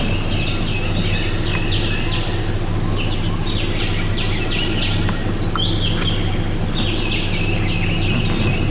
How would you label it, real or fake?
real